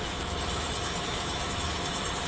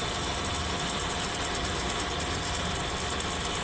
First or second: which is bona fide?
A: second